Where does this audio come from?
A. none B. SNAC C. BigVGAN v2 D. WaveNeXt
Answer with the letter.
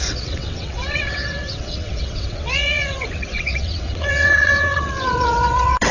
D